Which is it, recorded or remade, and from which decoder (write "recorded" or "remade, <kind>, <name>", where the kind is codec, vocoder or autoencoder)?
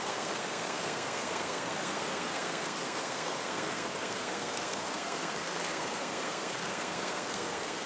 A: remade, codec, SNAC